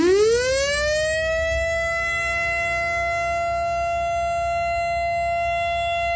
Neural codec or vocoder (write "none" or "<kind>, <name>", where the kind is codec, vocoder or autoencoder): none